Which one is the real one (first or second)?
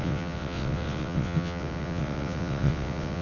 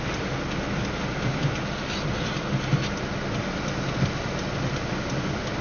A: second